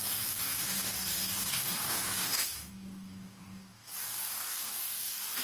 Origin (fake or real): fake